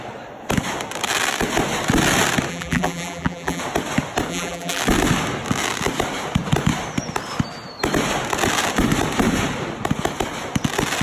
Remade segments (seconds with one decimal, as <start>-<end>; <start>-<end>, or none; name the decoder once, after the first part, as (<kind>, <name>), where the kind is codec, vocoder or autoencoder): 2.5-3.6 (vocoder, BigVGAN v2); 4.3-4.8